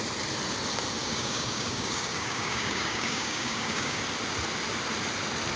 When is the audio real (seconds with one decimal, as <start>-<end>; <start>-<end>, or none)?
0.0-1.0; 4.0-5.6